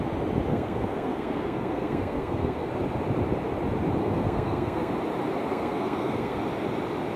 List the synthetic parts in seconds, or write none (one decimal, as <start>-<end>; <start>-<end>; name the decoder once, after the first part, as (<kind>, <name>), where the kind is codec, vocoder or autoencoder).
0.5-2.7 (codec, SNAC); 4.0-4.9; 5.5-6.4